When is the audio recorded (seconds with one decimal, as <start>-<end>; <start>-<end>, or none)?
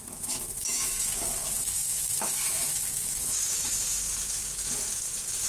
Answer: none